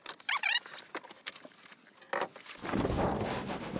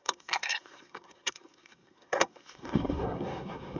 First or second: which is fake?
second